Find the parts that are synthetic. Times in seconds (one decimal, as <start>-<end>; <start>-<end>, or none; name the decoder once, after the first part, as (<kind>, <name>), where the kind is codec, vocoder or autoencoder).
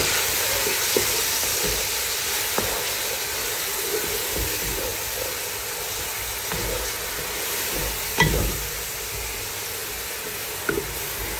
none